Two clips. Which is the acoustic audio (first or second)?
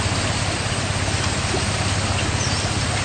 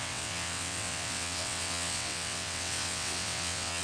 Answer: first